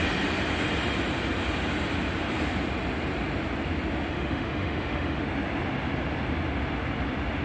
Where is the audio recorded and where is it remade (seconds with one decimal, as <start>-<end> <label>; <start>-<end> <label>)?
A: 0.0-4.1 recorded; 4.1-5.2 remade; 5.2-7.4 recorded